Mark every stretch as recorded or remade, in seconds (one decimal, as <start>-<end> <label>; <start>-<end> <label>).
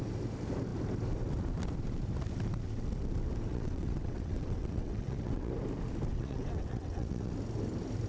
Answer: 0.0-3.5 recorded; 3.5-5.5 remade; 5.5-6.1 recorded; 6.1-7.3 remade; 7.3-8.1 recorded